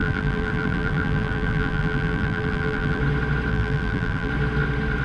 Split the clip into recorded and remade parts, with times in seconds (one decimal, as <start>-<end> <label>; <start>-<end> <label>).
0.0-3.0 remade; 3.0-3.5 recorded; 3.5-4.3 remade; 4.3-5.0 recorded